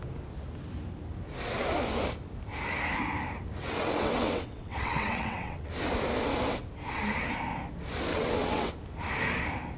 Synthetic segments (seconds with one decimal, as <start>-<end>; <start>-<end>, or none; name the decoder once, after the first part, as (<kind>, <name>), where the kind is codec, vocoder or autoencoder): 3.6-5.7 (vocoder, WaveNeXt); 8.1-8.7